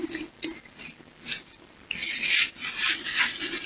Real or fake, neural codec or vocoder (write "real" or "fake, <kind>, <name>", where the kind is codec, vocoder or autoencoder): real